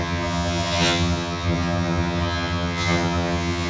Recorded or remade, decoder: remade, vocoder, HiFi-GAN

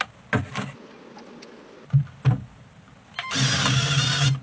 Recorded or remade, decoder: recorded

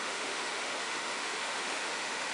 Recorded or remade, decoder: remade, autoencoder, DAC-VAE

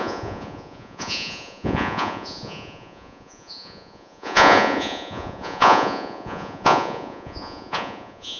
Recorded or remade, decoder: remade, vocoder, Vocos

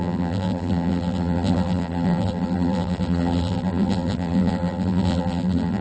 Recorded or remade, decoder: remade, vocoder, BigVGAN v2